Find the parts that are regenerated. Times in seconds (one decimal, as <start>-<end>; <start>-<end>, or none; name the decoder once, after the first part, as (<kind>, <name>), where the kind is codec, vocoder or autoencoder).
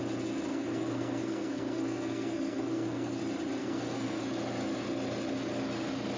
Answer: 0.5-3.2 (codec, SNAC); 3.6-4.2